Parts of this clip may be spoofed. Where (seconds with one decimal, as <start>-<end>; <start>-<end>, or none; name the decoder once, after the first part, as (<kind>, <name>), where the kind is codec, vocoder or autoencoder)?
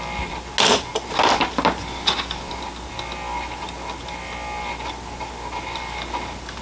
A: none